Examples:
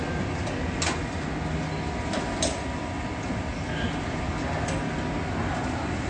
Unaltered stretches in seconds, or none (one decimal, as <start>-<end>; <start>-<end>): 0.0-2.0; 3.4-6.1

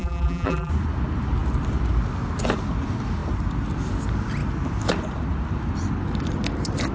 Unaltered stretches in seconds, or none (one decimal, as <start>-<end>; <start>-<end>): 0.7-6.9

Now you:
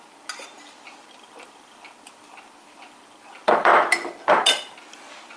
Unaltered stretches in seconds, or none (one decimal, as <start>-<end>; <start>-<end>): 0.0-5.4

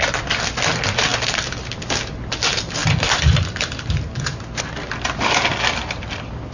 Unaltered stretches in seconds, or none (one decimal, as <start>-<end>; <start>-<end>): 0.0-1.1; 1.7-2.8; 4.6-6.5